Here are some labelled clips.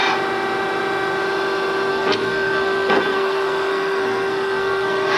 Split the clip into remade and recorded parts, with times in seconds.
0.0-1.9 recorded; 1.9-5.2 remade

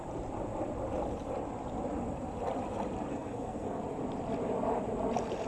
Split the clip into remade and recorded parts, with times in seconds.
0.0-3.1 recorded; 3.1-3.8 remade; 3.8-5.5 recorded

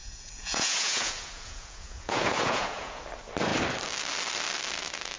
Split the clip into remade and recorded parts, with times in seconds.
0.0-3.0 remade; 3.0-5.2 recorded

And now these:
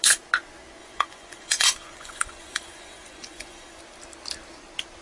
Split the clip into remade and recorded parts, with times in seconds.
0.0-0.8 recorded; 0.8-3.8 remade; 3.8-5.0 recorded

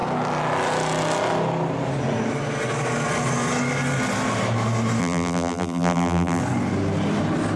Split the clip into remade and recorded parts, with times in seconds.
0.0-5.0 recorded; 5.0-6.4 remade; 6.4-7.6 recorded